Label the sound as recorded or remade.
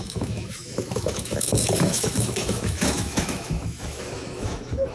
remade